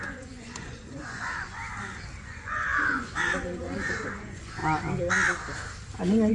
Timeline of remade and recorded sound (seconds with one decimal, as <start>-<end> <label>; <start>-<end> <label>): 0.0-1.6 remade; 1.6-2.2 recorded; 2.2-4.6 remade; 4.6-6.3 recorded